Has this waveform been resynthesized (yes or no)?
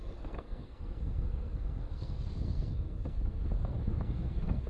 yes